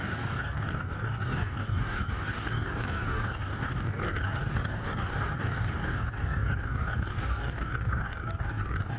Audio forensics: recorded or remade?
remade